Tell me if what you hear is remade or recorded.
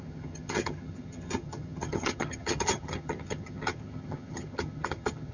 remade